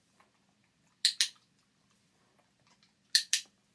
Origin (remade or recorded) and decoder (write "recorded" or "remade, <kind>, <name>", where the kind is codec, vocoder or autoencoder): recorded